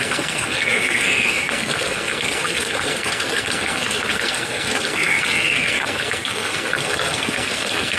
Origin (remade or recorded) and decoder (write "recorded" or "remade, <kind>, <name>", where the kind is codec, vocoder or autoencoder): remade, codec, SNAC